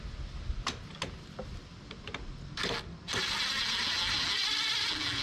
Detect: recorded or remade recorded